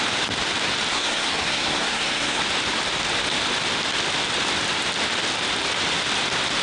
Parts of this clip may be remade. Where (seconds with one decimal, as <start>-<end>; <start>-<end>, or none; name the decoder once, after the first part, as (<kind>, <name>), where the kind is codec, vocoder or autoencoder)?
0.9-2.4 (codec, SNAC)